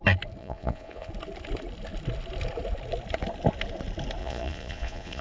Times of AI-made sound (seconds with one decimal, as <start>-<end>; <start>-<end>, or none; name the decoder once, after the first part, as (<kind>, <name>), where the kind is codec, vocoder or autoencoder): 0.4-1.1 (vocoder, Vocos); 4.2-5.2